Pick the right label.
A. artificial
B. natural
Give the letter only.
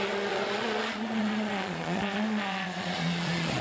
A